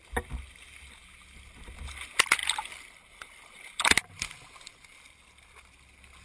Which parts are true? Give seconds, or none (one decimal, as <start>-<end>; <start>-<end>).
0.0-6.2